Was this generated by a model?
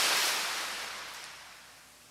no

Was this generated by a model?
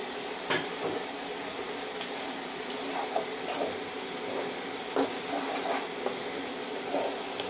no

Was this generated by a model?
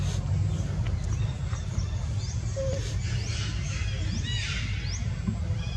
no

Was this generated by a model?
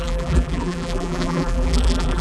yes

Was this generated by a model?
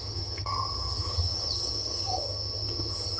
yes